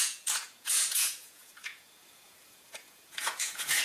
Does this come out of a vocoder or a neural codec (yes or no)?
yes